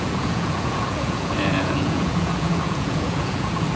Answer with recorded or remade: remade